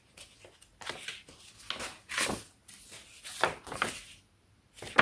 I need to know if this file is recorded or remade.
recorded